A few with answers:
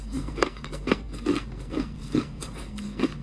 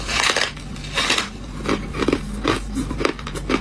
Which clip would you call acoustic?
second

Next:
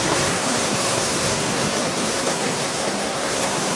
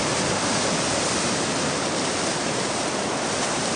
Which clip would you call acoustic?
second